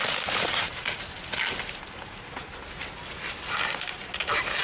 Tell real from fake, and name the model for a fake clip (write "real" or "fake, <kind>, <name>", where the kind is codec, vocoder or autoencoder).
real